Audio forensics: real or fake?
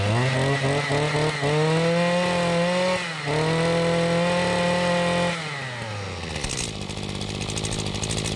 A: real